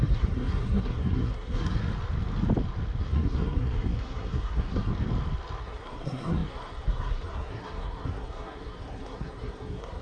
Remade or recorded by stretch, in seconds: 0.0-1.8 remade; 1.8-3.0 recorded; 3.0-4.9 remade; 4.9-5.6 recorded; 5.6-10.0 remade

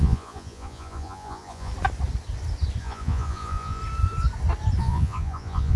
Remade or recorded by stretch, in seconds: 0.0-1.7 remade; 1.7-2.8 recorded; 2.8-3.8 remade; 3.8-4.8 recorded; 4.8-5.8 remade

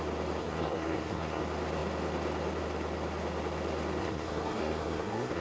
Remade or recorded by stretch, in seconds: 0.0-0.4 recorded; 0.4-1.4 remade; 1.4-4.0 recorded; 4.0-5.4 remade

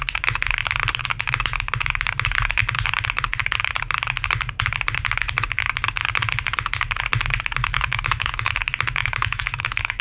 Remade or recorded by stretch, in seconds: 0.0-7.6 recorded; 7.6-8.5 remade; 8.5-9.0 recorded; 9.0-10.0 remade

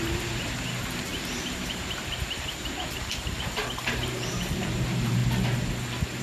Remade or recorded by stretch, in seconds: 0.0-5.2 remade; 5.2-6.2 recorded

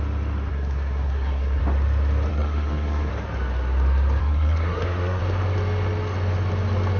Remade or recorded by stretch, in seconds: 0.0-0.5 recorded; 0.5-1.6 remade; 1.6-2.3 recorded; 2.3-3.1 remade; 3.1-4.2 recorded; 4.2-5.2 remade; 5.2-7.0 recorded

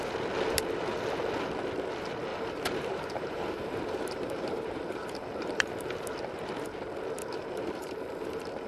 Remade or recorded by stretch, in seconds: 0.0-2.3 recorded; 2.3-5.7 remade; 5.7-7.2 recorded; 7.2-8.7 remade